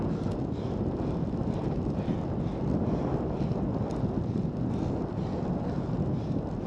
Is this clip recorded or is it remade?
recorded